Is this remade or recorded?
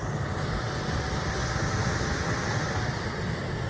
recorded